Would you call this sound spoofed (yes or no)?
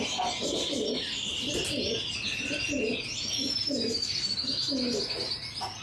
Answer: no